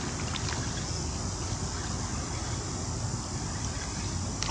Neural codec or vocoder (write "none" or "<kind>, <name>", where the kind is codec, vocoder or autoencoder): none